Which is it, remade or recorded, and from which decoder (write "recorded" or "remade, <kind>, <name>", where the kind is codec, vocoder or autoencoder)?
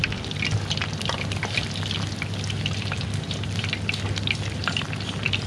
recorded